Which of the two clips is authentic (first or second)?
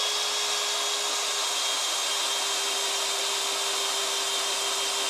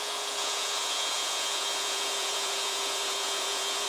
first